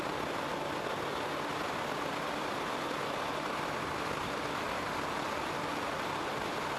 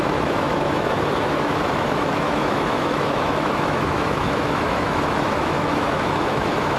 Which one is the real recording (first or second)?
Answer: first